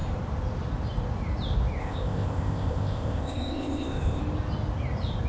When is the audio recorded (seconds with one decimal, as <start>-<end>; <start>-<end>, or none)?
0.0-1.8; 4.2-5.3